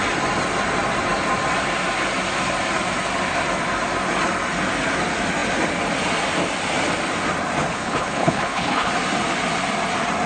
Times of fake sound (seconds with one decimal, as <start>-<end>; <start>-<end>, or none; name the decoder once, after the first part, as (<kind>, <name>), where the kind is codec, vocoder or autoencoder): 7.7-8.9 (codec, HILCodec)